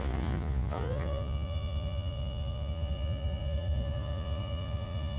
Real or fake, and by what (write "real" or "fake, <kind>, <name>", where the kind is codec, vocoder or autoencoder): fake, vocoder, Vocos